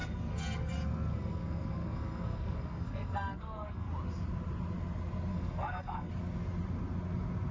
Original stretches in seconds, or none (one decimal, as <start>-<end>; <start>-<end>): 3.9-5.3; 6.1-7.5